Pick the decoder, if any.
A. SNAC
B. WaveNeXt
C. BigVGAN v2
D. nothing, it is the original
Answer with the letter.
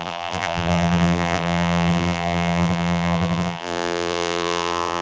C